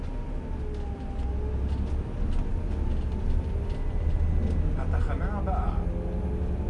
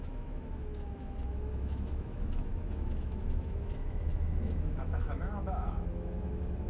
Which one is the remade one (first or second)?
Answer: second